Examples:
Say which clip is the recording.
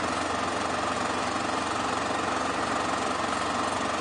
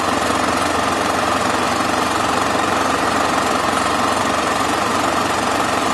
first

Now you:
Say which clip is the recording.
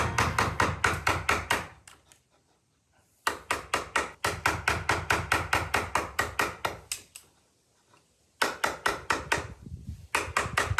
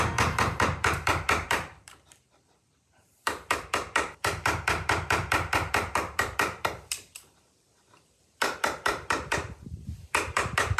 first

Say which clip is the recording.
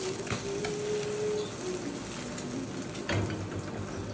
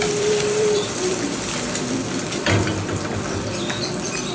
first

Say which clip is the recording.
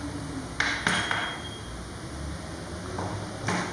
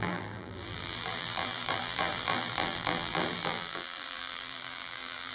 first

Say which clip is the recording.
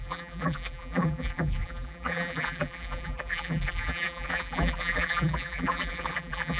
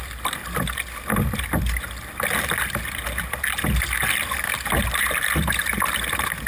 second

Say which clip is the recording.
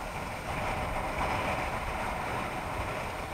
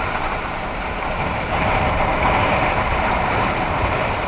first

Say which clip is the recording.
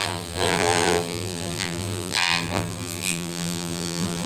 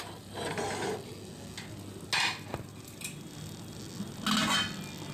second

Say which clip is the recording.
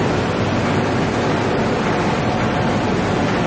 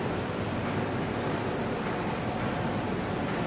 first